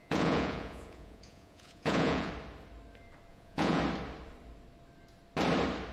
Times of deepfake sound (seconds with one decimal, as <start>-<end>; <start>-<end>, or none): 0.0-2.3; 3.3-3.8